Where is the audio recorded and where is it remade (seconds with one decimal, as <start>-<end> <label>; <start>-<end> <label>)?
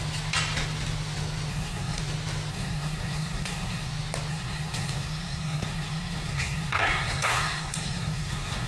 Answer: 0.0-1.5 recorded; 1.5-2.0 remade; 2.0-2.5 recorded; 2.5-3.9 remade; 3.9-4.3 recorded; 4.3-8.7 remade